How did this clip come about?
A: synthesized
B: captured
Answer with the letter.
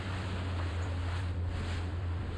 A